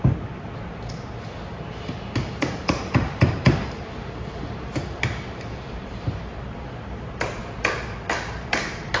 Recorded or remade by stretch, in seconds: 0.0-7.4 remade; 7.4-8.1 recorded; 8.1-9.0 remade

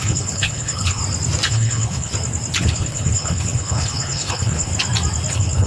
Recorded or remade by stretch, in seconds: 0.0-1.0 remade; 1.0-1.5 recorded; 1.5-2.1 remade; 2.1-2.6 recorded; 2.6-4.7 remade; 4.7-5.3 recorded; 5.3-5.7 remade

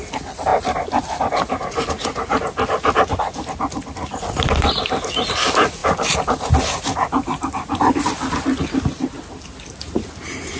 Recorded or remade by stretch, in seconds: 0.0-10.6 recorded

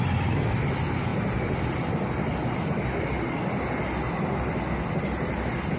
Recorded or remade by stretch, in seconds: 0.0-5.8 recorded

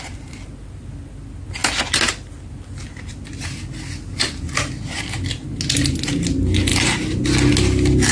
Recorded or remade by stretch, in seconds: 0.0-8.1 recorded